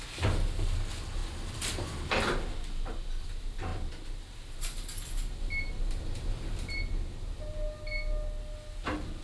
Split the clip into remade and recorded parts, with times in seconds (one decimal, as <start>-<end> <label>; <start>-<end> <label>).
0.0-9.2 recorded